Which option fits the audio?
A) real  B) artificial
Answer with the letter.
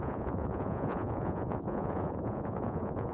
B